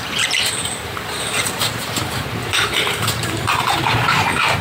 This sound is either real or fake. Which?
fake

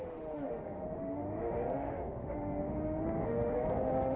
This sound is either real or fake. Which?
fake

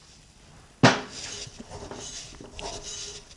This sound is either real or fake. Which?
real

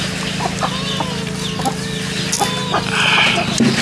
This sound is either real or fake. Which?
real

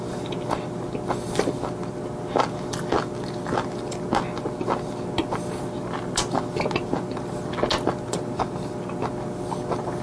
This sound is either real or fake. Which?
real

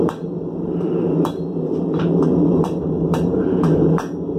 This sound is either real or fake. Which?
fake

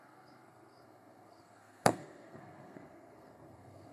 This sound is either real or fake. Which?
fake